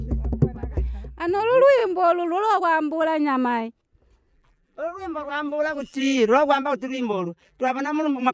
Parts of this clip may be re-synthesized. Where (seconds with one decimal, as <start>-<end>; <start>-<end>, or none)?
4.3-8.3

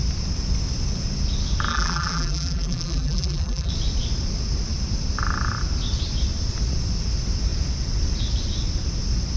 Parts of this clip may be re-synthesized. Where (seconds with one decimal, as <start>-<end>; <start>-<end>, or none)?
1.7-3.7

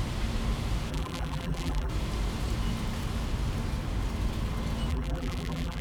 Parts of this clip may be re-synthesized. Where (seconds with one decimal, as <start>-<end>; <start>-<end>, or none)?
0.9-1.9; 4.9-5.8

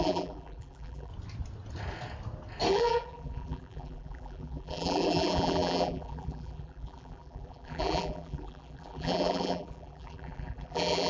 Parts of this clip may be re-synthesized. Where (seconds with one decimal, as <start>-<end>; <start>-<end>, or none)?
0.0-1.1; 2.7-11.1

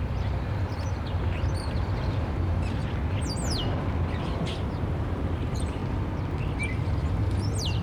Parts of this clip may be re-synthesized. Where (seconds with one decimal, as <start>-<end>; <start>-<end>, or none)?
0.0-2.8; 4.2-5.8; 6.6-7.8